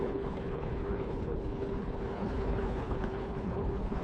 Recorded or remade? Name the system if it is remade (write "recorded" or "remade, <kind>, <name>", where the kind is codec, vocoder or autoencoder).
remade, codec, HILCodec